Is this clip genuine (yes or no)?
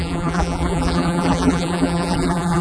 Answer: no